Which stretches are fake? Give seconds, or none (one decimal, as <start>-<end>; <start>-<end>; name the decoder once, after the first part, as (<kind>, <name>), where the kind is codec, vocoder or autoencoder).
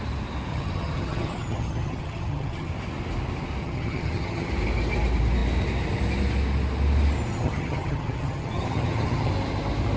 0.5-2.7 (vocoder, HiFi-GAN); 3.6-4.5; 7.3-9.3